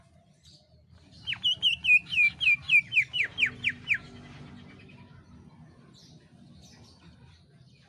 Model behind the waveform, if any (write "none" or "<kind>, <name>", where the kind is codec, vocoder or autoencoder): none